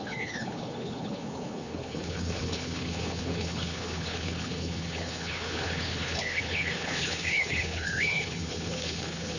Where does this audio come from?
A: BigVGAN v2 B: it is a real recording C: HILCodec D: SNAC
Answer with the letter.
C